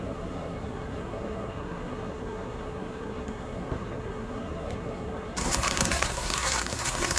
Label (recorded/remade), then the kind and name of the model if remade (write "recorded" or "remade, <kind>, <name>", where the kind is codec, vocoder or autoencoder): remade, codec, SNAC